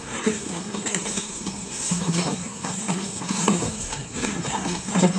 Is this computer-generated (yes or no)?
yes